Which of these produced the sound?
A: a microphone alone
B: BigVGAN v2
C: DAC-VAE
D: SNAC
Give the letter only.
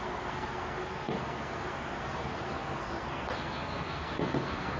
D